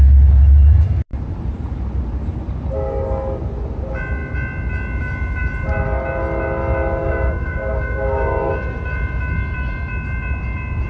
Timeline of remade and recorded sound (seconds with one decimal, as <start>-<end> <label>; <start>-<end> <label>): 0.0-7.0 recorded; 7.0-8.5 remade; 8.5-10.9 recorded